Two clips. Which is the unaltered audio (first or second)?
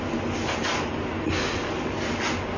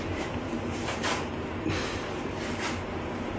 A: first